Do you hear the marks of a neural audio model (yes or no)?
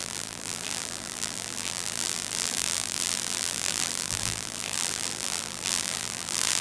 yes